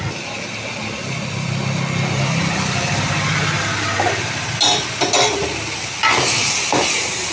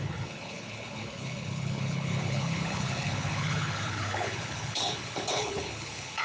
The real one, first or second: first